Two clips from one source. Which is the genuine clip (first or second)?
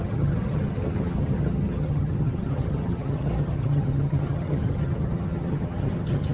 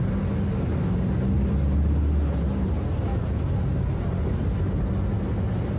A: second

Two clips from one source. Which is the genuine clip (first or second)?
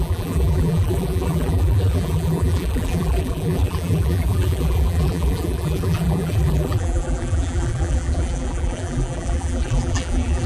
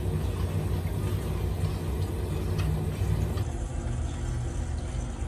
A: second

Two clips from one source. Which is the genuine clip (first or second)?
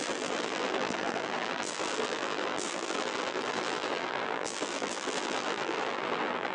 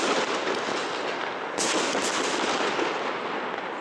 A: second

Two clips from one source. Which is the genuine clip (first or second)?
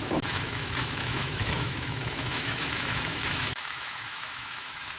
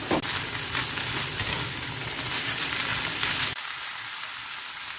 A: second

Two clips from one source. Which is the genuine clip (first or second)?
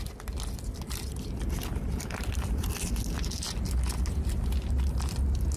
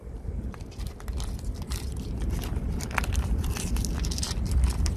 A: first